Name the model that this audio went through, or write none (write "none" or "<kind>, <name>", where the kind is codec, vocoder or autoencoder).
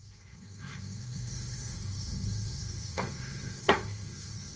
codec, SNAC